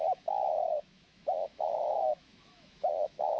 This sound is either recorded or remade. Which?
remade